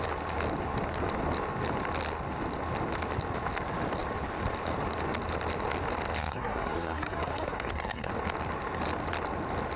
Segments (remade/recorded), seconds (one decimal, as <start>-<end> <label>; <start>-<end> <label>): 0.0-6.2 recorded; 6.2-8.1 remade; 8.1-9.8 recorded